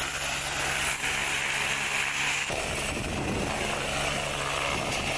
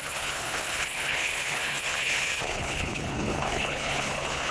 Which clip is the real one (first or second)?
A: first